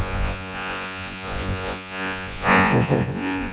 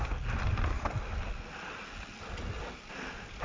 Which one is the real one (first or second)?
second